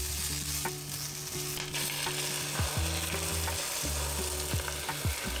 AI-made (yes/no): no